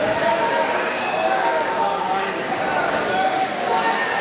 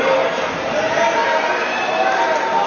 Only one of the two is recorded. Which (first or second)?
second